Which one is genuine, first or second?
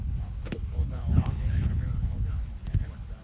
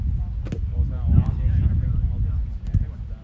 second